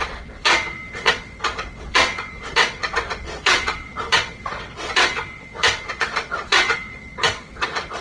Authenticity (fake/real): fake